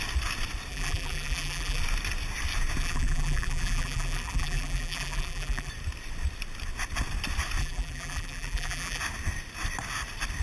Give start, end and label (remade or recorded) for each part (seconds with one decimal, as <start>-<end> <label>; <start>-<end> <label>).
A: 0.0-0.7 recorded; 0.7-1.8 remade; 1.8-2.8 recorded; 2.8-5.7 remade; 5.7-7.6 recorded; 7.6-9.0 remade; 9.0-10.4 recorded